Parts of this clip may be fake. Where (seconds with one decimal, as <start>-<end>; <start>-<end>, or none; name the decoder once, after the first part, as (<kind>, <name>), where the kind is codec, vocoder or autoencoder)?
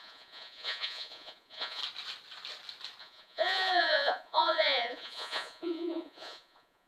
0.0-1.8 (vocoder, Vocos); 3.0-6.9